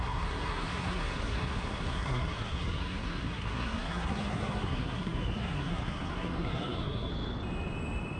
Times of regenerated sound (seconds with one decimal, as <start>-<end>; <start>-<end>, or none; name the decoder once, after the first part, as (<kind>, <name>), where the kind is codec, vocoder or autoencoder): 0.0-7.1 (codec, SNAC)